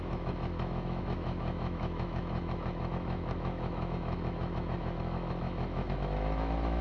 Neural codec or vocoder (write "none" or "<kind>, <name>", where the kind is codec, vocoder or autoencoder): autoencoder, DAC-VAE